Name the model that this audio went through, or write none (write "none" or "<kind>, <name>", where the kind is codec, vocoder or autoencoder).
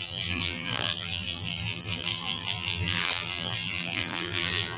vocoder, BigVGAN v2